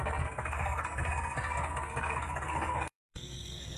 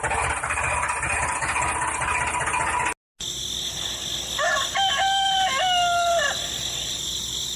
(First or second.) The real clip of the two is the second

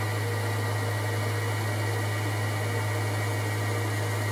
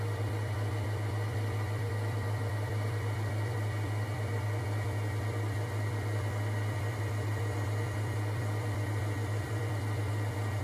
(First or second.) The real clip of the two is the first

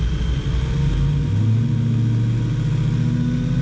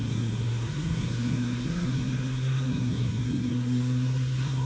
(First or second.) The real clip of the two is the first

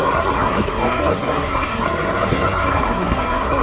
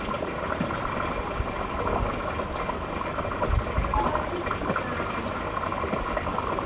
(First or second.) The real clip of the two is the second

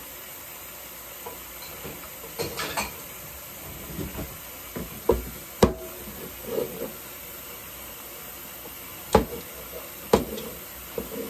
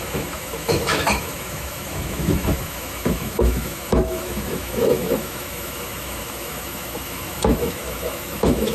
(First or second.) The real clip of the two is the first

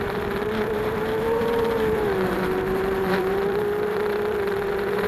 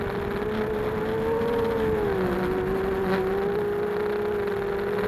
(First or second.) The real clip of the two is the second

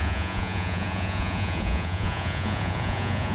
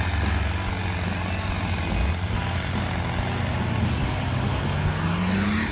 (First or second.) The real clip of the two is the second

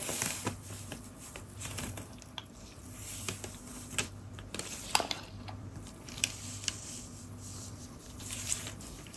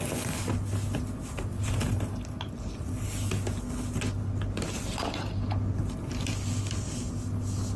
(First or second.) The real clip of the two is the second